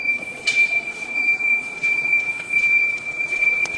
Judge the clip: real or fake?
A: fake